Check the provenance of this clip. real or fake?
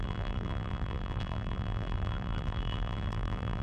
fake